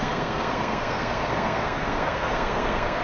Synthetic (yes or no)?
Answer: yes